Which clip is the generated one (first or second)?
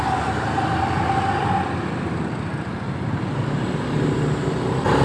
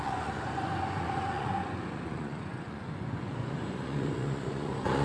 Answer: second